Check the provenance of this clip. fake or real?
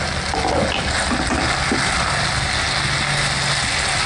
real